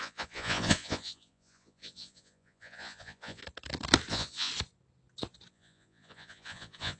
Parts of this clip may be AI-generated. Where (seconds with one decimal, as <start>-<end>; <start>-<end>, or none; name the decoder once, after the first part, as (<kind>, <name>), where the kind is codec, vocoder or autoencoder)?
0.0-3.4 (vocoder, Vocos); 4.1-4.5; 5.5-7.0